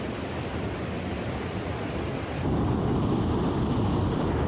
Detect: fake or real real